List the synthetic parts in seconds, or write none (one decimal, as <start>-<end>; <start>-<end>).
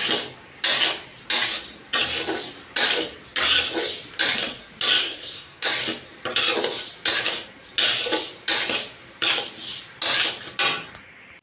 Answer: 5.0-5.7